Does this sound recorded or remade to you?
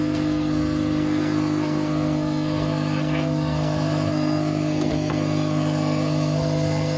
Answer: remade